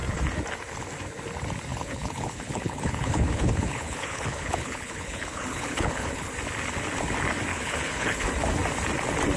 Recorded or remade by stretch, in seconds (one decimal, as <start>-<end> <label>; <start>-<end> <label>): 0.0-1.7 recorded; 1.7-6.3 remade; 6.3-7.5 recorded; 7.5-8.3 remade; 8.3-9.4 recorded